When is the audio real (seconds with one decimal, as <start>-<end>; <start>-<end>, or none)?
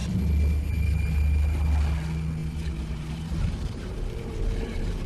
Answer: 0.0-2.4